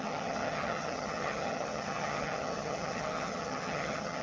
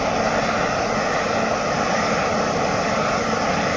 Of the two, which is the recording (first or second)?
second